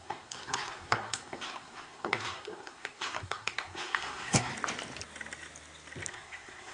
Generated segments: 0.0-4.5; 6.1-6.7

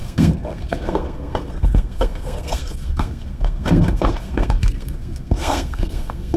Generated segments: 0.0-6.4

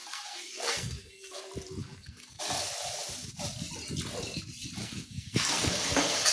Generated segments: 0.0-1.4; 1.8-2.4; 4.8-6.3

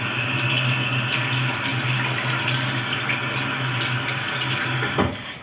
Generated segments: none

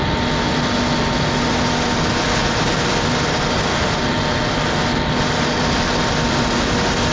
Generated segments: none

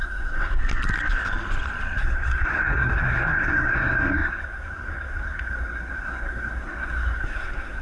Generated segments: 0.0-0.6; 2.0-7.8

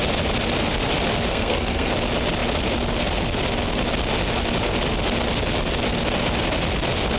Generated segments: 1.3-1.9

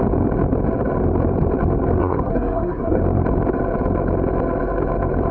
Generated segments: 2.0-3.0